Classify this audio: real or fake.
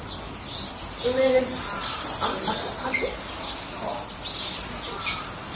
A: real